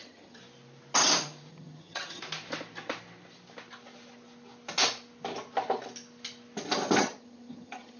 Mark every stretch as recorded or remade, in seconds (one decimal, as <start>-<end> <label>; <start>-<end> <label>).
0.0-0.4 remade; 0.4-1.5 recorded; 1.5-2.2 remade; 2.2-7.0 recorded; 7.0-8.0 remade